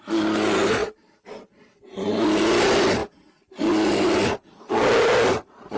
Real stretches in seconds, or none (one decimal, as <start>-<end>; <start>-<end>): 0.0-5.8